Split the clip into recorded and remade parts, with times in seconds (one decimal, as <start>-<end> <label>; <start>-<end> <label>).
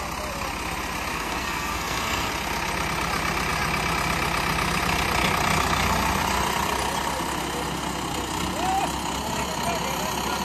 0.0-1.1 recorded; 1.1-2.3 remade; 2.3-10.4 recorded